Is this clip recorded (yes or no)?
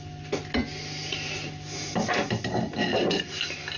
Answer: yes